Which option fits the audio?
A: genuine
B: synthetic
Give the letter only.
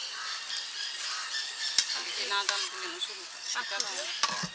A